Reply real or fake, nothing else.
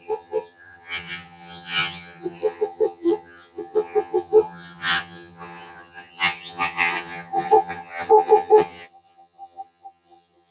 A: fake